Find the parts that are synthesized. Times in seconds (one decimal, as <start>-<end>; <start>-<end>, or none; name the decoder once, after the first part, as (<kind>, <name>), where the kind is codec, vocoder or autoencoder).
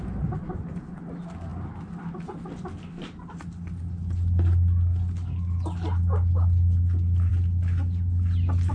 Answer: none